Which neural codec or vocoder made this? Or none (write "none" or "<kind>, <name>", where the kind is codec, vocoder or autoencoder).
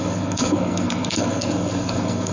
codec, SNAC